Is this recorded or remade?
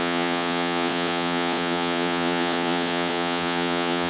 remade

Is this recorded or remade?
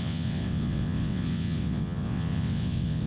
remade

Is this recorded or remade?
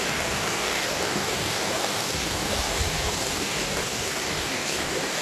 remade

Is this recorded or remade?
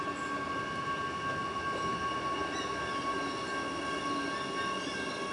recorded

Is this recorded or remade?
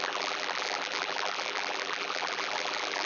remade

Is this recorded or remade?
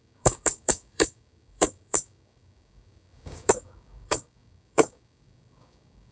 remade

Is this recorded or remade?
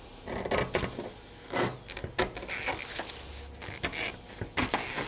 recorded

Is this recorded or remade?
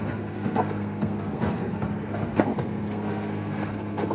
remade